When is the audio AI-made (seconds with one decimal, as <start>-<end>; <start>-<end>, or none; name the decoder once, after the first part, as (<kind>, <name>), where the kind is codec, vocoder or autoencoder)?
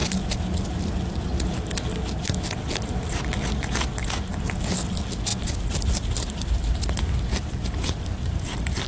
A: 4.4-5.3 (vocoder, BigVGAN v2); 6.5-8.9